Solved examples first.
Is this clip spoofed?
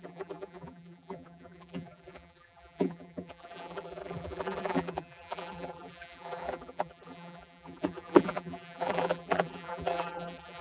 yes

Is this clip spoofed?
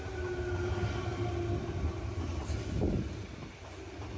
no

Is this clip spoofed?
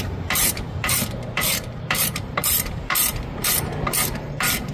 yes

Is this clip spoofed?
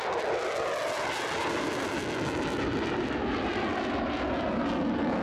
no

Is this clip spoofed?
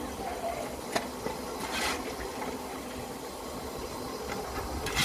no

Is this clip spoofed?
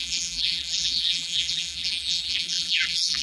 yes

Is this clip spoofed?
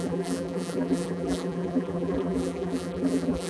yes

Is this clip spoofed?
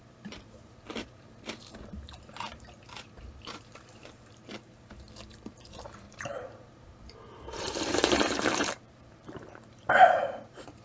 yes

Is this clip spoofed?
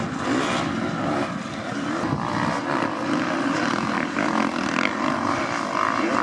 yes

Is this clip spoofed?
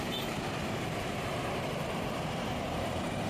yes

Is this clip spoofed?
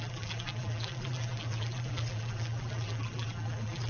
yes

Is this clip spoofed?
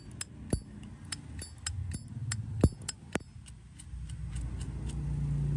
no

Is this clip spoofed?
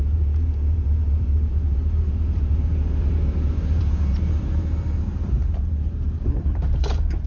yes